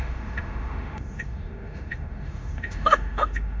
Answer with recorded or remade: remade